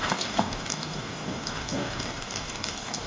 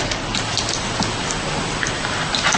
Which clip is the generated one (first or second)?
first